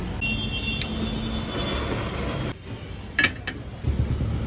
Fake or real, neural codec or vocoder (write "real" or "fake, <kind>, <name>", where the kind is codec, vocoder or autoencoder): real